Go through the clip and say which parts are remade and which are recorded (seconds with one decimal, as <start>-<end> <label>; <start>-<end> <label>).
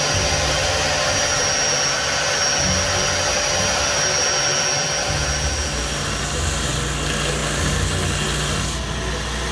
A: 0.0-9.5 recorded